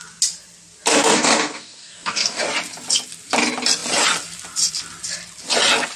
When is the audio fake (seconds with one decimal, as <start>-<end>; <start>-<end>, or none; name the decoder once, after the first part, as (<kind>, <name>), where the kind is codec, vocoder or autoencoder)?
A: 0.9-2.4 (codec, DAC)